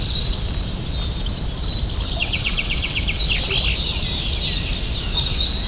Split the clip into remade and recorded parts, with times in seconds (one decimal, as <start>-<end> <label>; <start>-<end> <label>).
0.0-2.2 recorded; 2.2-3.0 remade; 3.0-5.7 recorded